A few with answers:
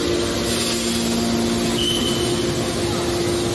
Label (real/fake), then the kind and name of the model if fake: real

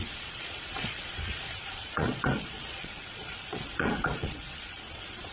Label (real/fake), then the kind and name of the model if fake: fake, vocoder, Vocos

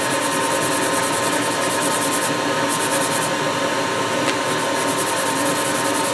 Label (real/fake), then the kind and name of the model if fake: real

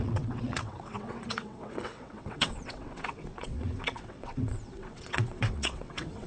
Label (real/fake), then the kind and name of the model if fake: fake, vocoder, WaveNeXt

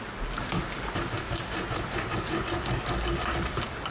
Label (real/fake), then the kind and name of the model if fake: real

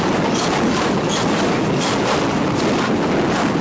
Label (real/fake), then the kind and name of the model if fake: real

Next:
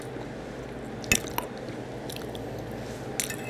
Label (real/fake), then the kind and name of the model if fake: real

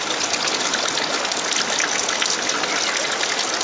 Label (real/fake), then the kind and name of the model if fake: real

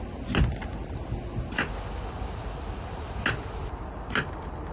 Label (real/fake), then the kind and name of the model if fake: real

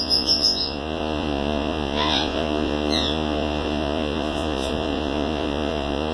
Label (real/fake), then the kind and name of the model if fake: fake, vocoder, Vocos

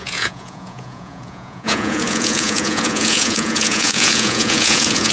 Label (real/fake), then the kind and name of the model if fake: fake, vocoder, Vocos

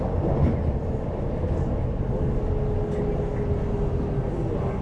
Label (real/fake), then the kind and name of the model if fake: real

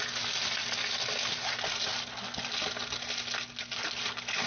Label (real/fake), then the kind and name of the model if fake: real